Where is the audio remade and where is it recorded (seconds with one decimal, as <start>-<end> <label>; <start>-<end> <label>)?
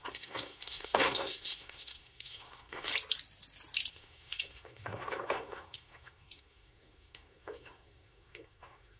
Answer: 0.0-2.9 remade; 2.9-3.9 recorded; 3.9-9.0 remade